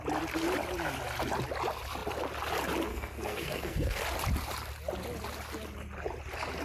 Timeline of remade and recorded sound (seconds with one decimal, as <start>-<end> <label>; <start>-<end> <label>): 0.0-2.9 recorded; 2.9-4.0 remade; 4.0-6.6 recorded